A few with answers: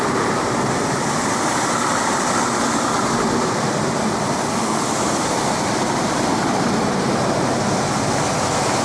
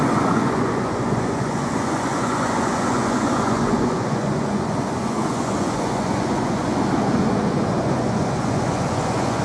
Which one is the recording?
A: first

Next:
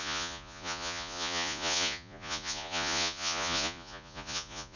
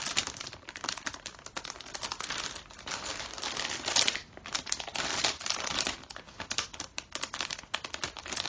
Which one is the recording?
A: second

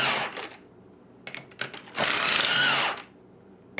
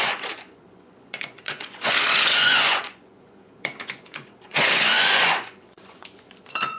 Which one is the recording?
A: first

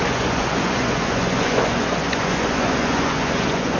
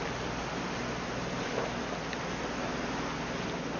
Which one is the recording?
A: second